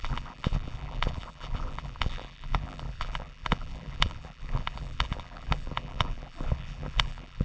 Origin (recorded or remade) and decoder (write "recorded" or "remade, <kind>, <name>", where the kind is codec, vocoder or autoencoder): remade, vocoder, BigVGAN v2